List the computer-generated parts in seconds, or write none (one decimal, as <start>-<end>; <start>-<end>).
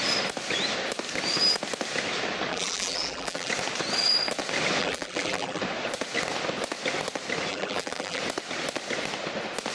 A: 2.5-3.5; 4.8-5.6; 7.5-8.2